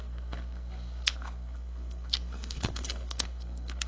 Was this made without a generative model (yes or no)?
no